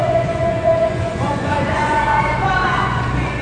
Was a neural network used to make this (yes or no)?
yes